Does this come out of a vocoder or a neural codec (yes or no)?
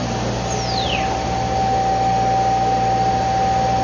no